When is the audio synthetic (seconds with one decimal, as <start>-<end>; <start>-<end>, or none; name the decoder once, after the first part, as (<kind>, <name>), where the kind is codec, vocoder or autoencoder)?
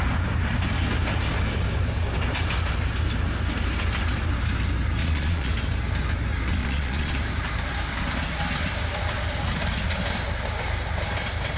5.0-5.5 (vocoder, Vocos); 6.6-7.2